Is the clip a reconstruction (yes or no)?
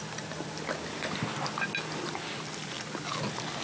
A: no